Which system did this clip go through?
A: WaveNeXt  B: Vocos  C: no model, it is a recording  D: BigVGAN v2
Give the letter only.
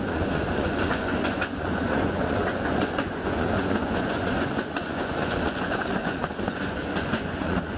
B